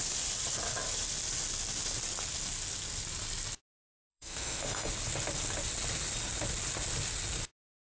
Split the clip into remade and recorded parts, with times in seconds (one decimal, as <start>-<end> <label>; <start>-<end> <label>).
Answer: 0.0-4.1 recorded; 4.1-4.9 remade; 4.9-7.8 recorded